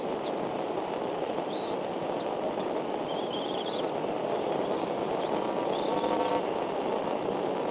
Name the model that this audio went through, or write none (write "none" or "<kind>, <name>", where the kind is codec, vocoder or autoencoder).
none